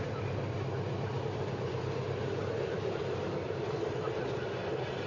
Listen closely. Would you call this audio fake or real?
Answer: fake